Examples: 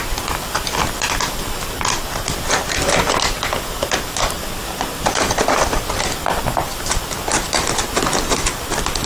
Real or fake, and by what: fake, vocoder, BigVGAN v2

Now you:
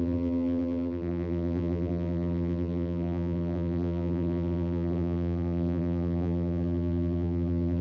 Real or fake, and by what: fake, vocoder, BigVGAN v2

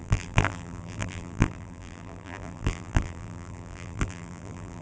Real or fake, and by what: fake, vocoder, BigVGAN v2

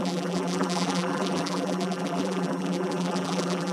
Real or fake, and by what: fake, vocoder, BigVGAN v2